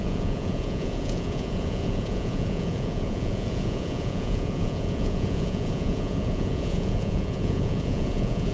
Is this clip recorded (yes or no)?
no